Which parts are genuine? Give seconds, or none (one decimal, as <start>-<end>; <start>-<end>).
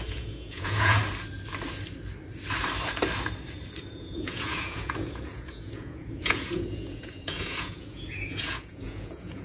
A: 1.0-3.8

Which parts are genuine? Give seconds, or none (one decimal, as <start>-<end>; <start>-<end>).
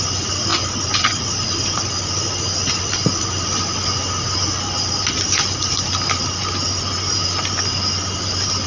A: 0.0-8.7